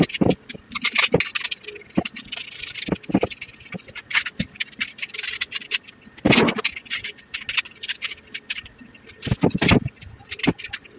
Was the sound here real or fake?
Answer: real